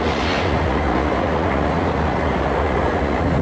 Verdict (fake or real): fake